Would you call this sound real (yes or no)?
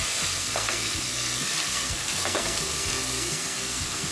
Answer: no